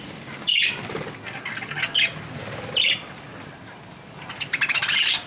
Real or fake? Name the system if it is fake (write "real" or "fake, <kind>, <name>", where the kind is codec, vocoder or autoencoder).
real